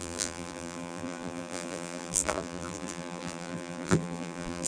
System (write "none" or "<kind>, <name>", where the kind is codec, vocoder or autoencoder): vocoder, BigVGAN v2